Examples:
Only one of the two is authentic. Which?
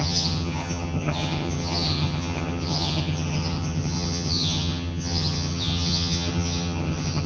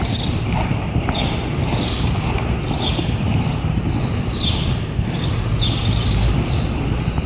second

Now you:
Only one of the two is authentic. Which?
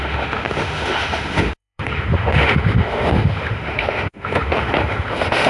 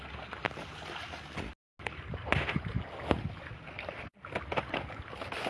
second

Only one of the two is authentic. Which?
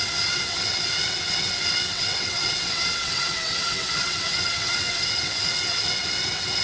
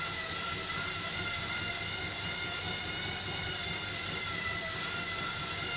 second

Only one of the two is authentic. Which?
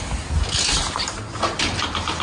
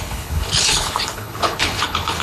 first